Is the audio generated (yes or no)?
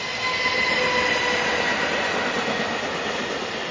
no